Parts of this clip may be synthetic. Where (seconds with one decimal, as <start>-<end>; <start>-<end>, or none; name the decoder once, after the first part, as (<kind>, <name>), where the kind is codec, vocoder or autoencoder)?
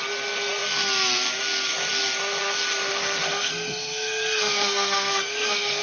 2.9-5.8 (codec, SNAC)